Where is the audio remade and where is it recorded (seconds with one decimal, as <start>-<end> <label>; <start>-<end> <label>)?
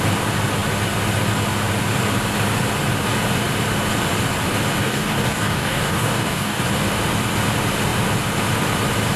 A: 0.0-4.8 recorded; 4.8-6.6 remade; 6.6-9.2 recorded